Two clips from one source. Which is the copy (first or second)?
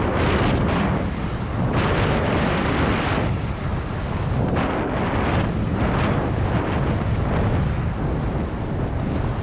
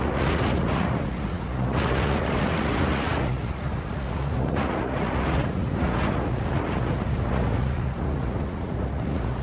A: second